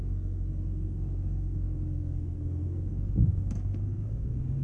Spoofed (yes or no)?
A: yes